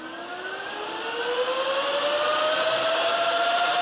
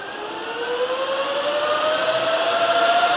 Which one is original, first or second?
first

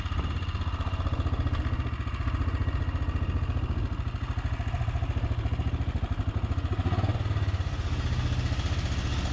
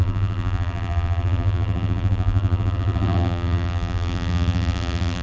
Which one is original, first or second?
first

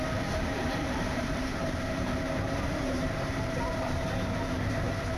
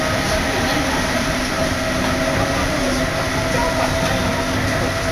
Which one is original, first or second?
second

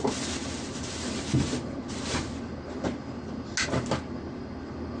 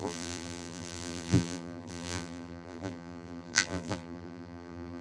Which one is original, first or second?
first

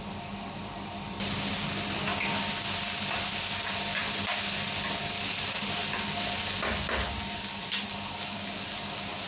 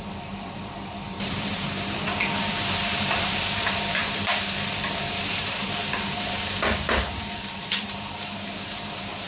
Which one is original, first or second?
first